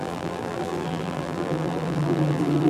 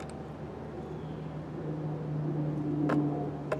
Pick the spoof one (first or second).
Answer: first